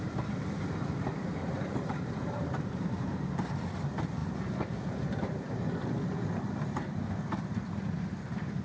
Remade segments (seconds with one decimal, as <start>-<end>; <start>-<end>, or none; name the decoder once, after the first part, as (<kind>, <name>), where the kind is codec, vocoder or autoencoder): 1.4-3.5 (vocoder, BigVGAN v2)